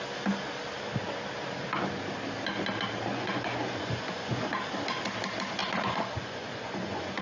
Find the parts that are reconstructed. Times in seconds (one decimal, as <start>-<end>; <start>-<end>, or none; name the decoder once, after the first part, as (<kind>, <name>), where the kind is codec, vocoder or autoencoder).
3.1-4.5 (vocoder, Vocos); 5.6-7.2